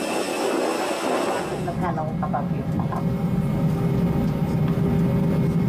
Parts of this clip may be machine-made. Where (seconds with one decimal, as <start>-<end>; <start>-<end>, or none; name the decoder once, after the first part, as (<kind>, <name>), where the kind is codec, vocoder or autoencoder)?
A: none